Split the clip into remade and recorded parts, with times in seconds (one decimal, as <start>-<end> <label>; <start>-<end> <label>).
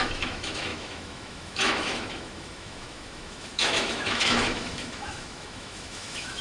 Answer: 0.0-6.4 remade